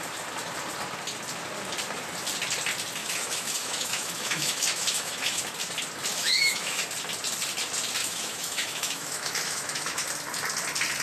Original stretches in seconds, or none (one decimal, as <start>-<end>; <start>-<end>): 0.0-3.0; 5.4-6.1; 6.8-8.0; 10.0-11.0